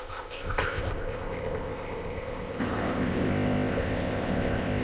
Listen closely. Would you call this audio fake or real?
fake